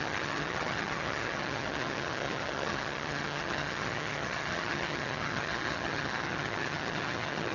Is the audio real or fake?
fake